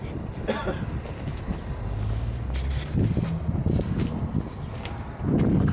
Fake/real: real